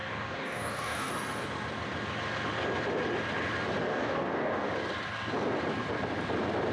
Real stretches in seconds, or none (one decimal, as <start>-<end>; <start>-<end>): 1.1-3.8; 4.7-6.7